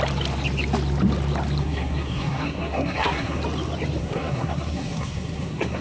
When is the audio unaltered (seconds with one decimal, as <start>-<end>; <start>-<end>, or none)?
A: 0.0-1.6; 3.4-4.0

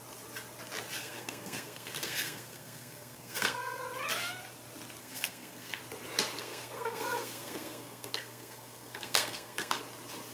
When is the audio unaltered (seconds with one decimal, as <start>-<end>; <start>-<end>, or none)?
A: 0.0-1.0; 3.8-5.0; 5.8-6.4; 9.8-10.3

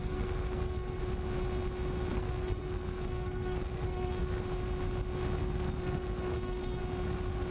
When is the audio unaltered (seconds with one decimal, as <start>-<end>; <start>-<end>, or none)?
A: 1.0-2.1; 4.2-5.4; 6.8-7.5